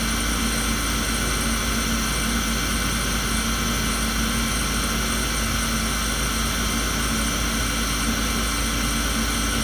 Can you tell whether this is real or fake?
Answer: real